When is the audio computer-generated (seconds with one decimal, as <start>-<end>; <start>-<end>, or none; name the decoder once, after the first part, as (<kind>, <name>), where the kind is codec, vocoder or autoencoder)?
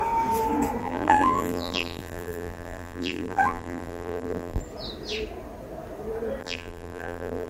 0.8-4.6 (vocoder, BigVGAN v2); 6.4-7.5